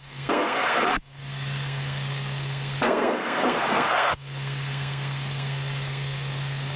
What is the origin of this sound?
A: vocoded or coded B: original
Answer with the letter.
A